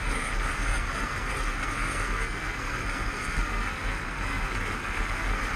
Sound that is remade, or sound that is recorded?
remade